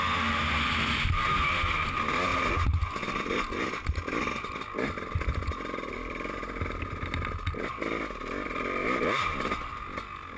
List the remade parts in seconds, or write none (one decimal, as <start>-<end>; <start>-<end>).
none